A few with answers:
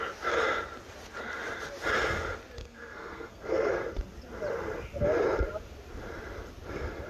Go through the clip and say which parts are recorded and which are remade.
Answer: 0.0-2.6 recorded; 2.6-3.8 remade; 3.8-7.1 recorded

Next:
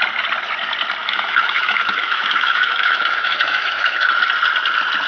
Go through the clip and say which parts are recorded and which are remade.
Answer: 0.0-1.0 recorded; 1.0-4.1 remade; 4.1-5.1 recorded

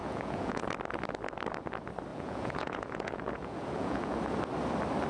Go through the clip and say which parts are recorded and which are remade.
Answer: 0.0-0.6 remade; 0.6-2.1 recorded; 2.1-4.2 remade; 4.2-5.1 recorded